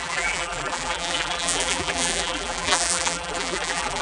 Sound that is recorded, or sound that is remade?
remade